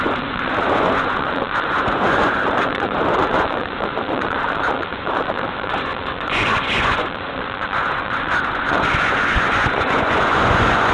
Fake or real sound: fake